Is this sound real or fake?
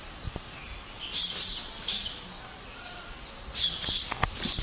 real